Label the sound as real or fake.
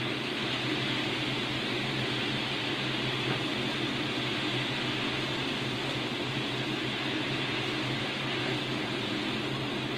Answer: real